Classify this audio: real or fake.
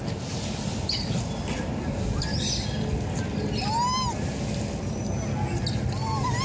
real